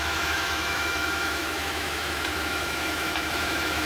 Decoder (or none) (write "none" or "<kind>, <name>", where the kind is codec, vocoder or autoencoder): autoencoder, DAC-VAE